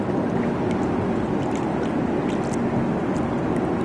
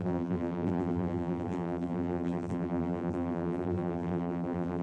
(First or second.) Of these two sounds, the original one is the first